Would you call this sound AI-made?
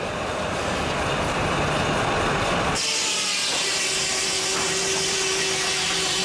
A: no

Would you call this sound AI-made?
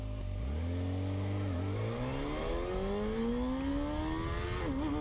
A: no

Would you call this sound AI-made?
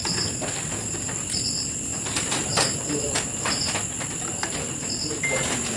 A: no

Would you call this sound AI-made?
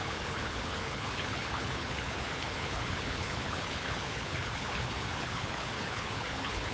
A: yes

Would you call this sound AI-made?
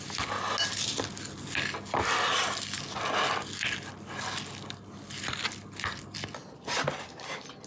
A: no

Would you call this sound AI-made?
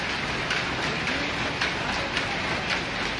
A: no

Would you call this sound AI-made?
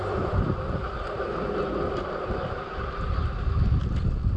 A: no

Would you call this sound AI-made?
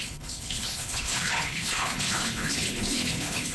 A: yes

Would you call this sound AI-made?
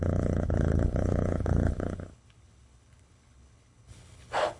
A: yes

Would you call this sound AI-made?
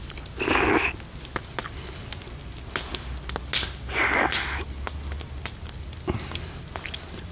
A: no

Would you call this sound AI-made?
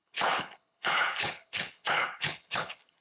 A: yes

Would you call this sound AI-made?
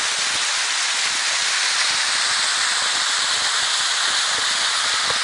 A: no